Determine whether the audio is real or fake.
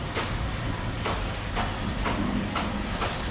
fake